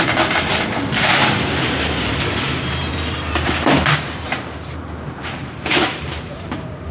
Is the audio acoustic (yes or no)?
no